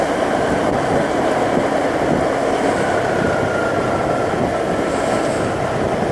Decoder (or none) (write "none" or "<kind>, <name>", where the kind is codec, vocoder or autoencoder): none